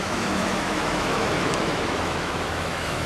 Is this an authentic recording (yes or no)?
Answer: no